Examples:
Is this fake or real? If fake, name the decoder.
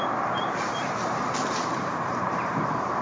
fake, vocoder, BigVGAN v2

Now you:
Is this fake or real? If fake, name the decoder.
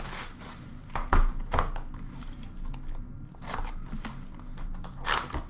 real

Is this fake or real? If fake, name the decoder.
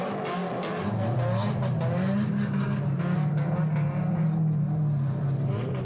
real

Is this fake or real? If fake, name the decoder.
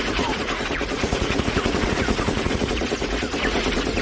fake, vocoder, Vocos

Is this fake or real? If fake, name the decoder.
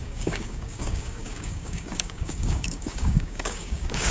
fake, codec, DAC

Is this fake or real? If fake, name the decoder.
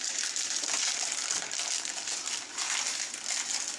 real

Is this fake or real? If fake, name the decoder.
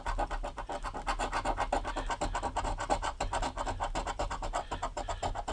real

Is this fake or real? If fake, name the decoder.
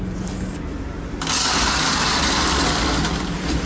real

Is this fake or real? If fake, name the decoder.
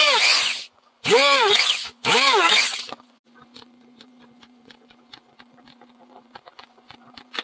fake, vocoder, Vocos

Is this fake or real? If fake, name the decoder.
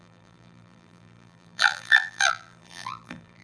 fake, vocoder, BigVGAN v2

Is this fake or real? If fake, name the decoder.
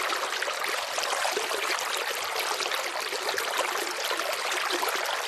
real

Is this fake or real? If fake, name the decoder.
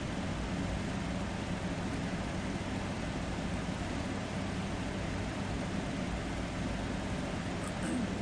real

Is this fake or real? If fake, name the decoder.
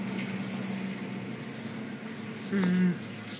real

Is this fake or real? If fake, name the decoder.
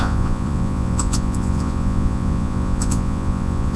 fake, vocoder, Vocos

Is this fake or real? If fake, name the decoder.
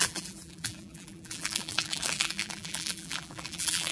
fake, vocoder, BigVGAN v2